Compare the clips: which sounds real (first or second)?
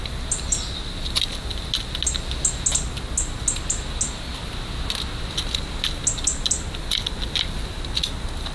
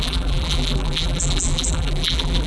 first